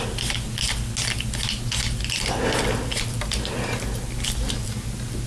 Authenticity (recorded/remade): recorded